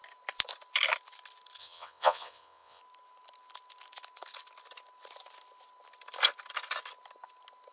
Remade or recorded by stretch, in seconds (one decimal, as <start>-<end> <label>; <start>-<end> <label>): 0.0-1.6 recorded; 1.6-2.8 remade; 2.8-7.7 recorded